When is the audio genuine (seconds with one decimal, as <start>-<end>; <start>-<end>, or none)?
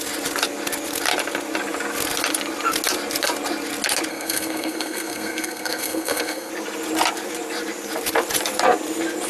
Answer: 0.0-4.1; 6.5-9.3